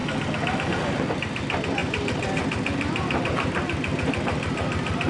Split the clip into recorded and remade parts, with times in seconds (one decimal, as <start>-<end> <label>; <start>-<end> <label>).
0.0-1.8 recorded; 1.8-5.1 remade